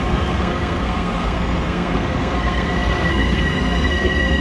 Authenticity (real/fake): fake